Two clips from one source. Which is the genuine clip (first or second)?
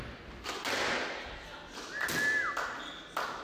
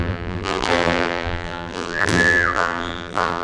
first